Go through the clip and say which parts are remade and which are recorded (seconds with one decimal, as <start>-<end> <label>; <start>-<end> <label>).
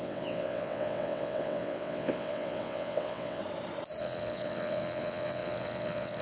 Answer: 0.0-3.4 remade; 3.4-4.0 recorded; 4.0-6.2 remade